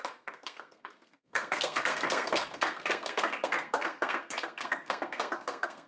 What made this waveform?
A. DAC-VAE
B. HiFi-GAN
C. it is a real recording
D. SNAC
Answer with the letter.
D